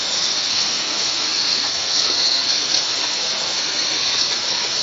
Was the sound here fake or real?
fake